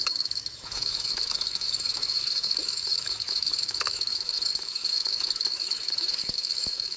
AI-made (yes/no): yes